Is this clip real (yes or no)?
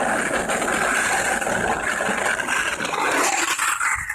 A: yes